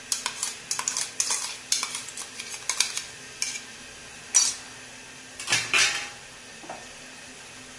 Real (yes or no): yes